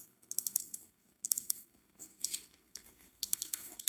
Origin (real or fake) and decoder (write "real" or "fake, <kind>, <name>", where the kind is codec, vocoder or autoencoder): fake, codec, SNAC